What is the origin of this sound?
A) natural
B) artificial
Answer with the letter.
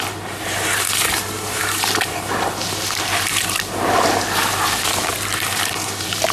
A